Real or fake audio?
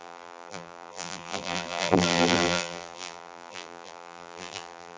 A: fake